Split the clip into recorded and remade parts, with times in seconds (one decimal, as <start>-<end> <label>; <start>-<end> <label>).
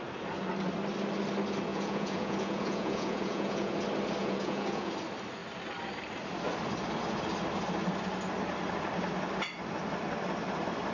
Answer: 0.0-1.7 recorded; 1.7-3.7 remade; 3.7-4.2 recorded; 4.2-4.9 remade; 4.9-10.9 recorded